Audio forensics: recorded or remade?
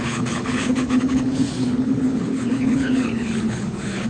remade